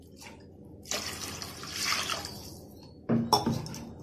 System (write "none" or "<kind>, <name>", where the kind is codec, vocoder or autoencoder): none